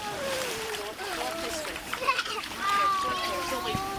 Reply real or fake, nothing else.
fake